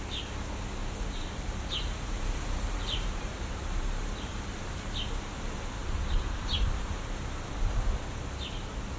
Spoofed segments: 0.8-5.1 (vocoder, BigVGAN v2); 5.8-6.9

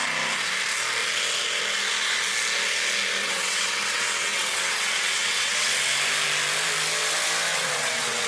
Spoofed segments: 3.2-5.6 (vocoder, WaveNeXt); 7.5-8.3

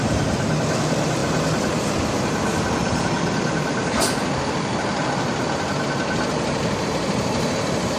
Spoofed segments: 0.0-2.5 (vocoder, BigVGAN v2); 6.3-8.0

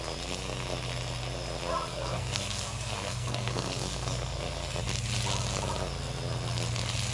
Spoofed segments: 1.9-4.8 (codec, SNAC)

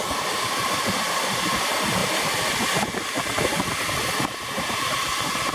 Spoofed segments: none

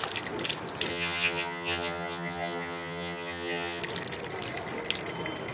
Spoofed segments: 0.9-3.8 (vocoder, HiFi-GAN)